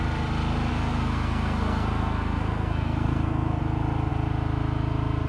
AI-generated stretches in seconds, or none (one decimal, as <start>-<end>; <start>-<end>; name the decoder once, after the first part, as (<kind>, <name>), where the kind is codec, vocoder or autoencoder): 0.7-3.6 (codec, SNAC)